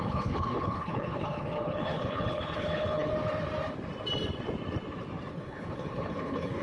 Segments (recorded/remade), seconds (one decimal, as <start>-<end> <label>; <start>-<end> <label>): 0.0-3.1 remade; 3.1-5.3 recorded; 5.3-6.6 remade